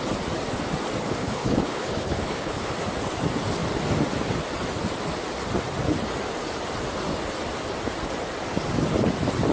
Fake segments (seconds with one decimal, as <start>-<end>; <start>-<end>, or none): 1.2-2.7

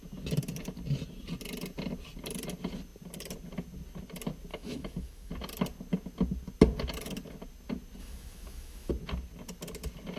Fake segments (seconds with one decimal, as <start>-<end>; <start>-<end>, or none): 4.5-5.3; 8.0-8.9

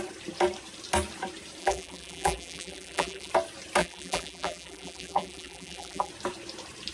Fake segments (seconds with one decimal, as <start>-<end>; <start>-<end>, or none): 1.6-3.3; 3.8-6.1

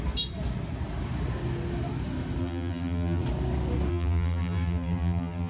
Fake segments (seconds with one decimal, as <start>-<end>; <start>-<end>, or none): 2.4-3.2; 3.9-5.5

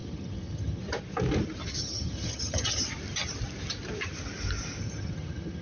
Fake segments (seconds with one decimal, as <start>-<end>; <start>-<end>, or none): 0.0-0.8; 1.8-2.8; 4.8-5.6

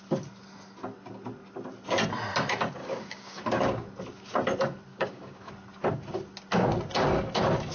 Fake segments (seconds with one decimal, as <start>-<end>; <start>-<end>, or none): 2.8-3.4; 4.9-5.5